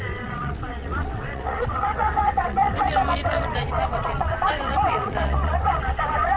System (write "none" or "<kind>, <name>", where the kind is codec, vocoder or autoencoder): vocoder, WaveNeXt